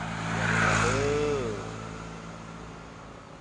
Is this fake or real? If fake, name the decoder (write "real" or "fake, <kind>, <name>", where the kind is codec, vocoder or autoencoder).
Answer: real